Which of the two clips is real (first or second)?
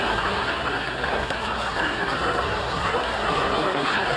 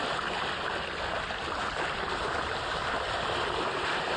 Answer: second